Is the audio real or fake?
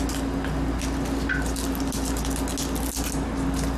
real